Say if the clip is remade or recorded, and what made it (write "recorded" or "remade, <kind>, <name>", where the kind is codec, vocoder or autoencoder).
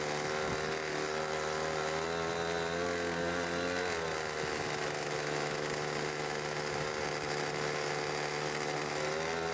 recorded